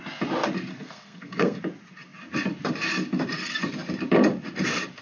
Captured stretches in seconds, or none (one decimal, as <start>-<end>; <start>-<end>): 0.0-0.7; 1.6-5.0